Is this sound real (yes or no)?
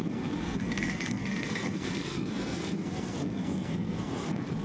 no